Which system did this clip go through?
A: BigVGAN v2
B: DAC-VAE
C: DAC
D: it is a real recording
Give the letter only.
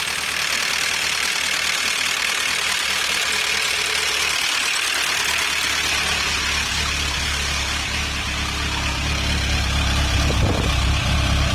D